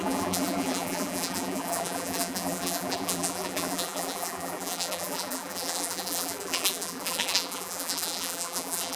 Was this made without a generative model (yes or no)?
no